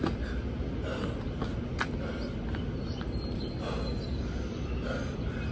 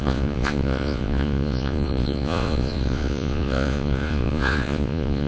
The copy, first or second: second